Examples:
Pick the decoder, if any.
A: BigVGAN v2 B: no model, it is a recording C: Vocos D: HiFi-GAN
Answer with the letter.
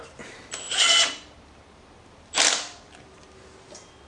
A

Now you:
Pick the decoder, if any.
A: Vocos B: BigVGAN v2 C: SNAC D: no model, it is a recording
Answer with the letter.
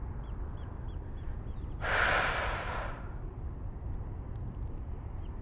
D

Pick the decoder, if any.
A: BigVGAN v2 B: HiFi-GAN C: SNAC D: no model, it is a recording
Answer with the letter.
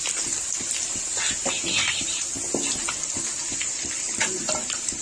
D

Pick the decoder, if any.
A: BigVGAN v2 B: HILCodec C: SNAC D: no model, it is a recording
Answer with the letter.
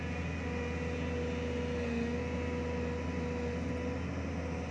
D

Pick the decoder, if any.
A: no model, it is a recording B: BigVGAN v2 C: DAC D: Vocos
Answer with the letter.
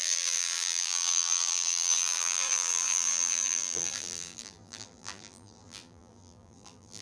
B